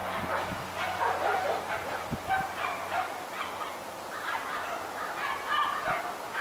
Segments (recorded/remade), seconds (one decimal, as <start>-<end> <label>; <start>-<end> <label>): 0.0-6.4 recorded